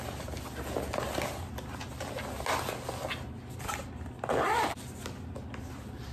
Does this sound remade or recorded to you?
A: recorded